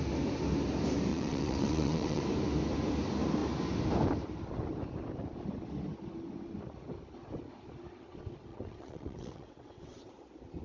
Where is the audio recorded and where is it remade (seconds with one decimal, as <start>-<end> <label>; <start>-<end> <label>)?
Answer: 0.0-1.1 recorded; 1.1-2.2 remade; 2.2-8.5 recorded; 8.5-10.1 remade; 10.1-10.6 recorded